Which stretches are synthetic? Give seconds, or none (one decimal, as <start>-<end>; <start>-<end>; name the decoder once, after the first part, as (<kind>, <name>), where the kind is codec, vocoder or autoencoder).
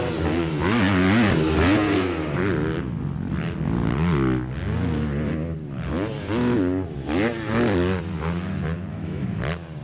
8.9-9.4 (autoencoder, DAC-VAE)